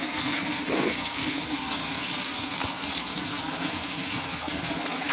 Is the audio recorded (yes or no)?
no